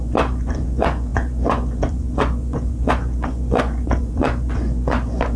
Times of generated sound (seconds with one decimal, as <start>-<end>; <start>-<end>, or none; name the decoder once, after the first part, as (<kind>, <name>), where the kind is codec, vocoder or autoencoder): 0.0-5.4 (vocoder, Vocos)